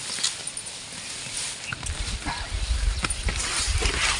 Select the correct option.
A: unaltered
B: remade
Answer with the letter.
A